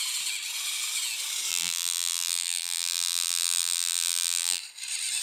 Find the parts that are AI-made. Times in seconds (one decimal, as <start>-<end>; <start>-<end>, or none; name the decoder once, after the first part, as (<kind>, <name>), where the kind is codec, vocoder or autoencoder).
1.5-4.6 (vocoder, BigVGAN v2)